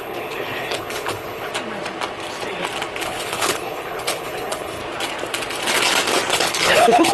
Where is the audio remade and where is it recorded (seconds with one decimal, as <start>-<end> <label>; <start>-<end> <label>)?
0.0-1.5 remade; 1.5-3.0 recorded; 3.0-4.8 remade; 4.8-6.3 recorded; 6.3-7.1 remade

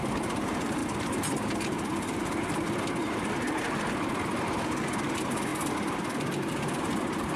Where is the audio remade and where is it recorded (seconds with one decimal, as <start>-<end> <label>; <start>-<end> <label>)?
0.0-7.4 recorded

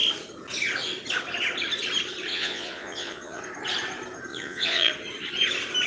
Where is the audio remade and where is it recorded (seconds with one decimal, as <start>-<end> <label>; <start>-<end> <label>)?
0.0-2.3 recorded; 2.3-3.4 remade; 3.4-4.3 recorded; 4.3-4.9 remade; 4.9-5.9 recorded

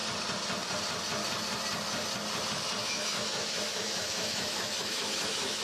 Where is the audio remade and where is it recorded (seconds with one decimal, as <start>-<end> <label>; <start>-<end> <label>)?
0.0-2.8 recorded; 2.8-5.6 remade